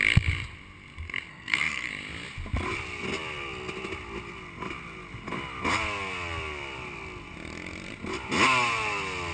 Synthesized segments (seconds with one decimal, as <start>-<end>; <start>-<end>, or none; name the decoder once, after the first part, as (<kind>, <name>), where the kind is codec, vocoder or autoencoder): 1.3-1.9 (codec, SNAC)